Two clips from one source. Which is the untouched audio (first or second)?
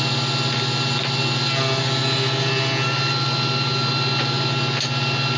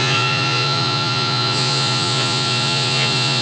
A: first